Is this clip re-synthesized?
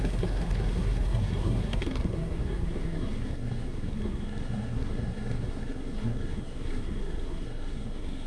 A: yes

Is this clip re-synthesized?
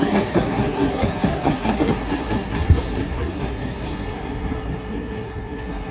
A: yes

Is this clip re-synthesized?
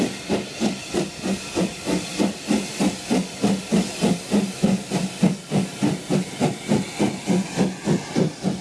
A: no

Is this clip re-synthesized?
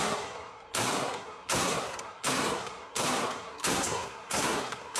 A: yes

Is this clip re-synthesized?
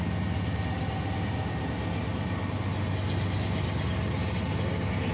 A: no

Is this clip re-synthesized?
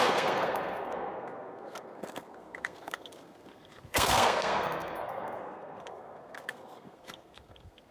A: yes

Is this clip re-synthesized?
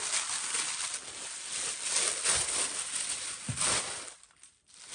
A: no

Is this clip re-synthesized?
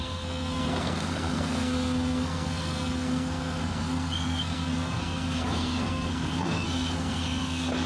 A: yes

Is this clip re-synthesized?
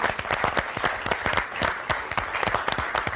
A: no